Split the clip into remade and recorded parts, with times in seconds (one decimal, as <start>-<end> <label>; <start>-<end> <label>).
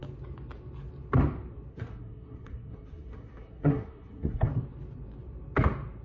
0.0-1.7 recorded; 1.7-4.5 remade; 4.5-6.0 recorded